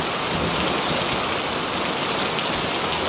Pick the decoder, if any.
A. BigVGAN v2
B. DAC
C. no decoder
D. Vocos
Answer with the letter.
C